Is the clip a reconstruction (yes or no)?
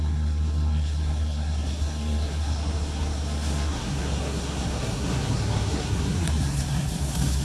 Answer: yes